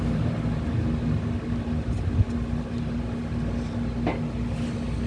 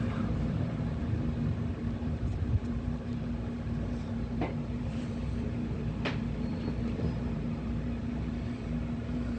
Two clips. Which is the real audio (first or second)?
first